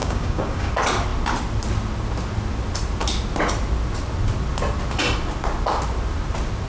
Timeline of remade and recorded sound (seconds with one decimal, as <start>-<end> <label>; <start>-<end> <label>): 0.0-0.7 remade; 0.7-6.7 recorded